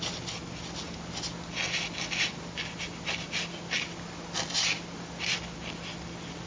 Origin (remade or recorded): recorded